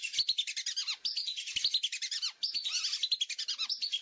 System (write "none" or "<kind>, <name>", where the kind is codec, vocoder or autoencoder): none